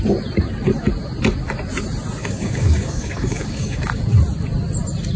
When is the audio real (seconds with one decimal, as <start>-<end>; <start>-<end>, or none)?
0.0-2.2; 4.0-5.2